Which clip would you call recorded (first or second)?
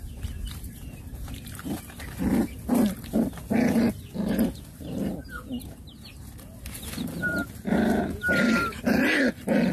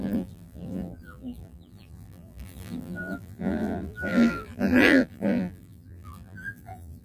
first